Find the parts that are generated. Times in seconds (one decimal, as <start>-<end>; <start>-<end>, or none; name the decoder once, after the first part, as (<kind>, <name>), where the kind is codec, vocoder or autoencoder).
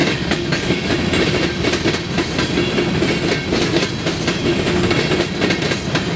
0.0-0.9 (codec, DAC)